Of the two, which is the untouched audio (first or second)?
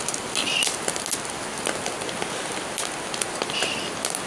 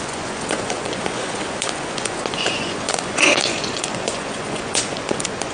first